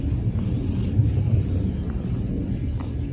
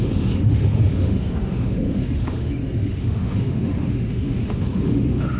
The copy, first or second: second